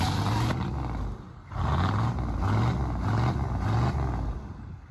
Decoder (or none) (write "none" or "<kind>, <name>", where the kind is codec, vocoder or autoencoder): none